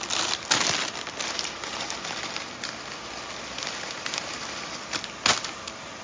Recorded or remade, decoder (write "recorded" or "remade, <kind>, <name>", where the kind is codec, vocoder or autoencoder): recorded